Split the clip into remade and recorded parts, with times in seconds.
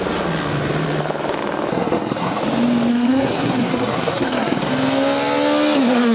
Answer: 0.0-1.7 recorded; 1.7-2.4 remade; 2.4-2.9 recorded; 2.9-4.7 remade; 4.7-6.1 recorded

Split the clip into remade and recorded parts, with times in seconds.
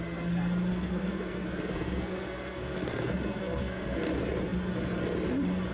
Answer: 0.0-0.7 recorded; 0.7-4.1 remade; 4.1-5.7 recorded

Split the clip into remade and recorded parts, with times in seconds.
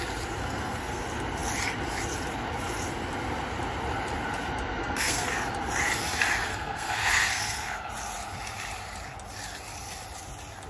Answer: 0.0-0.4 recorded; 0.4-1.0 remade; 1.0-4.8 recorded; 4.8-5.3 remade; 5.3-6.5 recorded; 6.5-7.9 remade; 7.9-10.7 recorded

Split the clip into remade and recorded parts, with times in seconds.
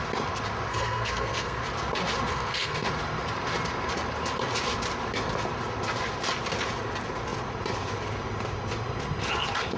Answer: 0.0-0.7 recorded; 0.7-1.6 remade; 1.6-2.3 recorded; 2.3-2.9 remade; 2.9-9.8 recorded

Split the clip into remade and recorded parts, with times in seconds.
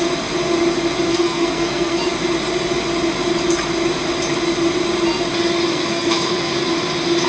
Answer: 0.0-1.1 recorded; 1.1-2.0 remade; 2.0-5.7 recorded; 5.7-6.5 remade; 6.5-7.3 recorded